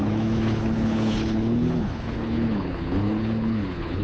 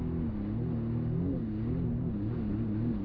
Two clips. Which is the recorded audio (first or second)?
second